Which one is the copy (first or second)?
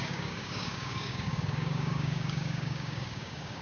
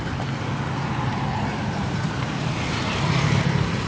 first